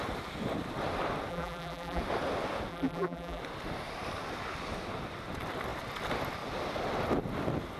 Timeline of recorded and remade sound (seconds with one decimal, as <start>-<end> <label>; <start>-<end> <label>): 0.0-1.3 recorded; 1.3-2.0 remade; 2.0-2.7 recorded; 2.7-3.4 remade; 3.4-7.8 recorded